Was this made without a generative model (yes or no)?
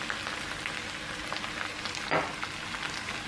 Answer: yes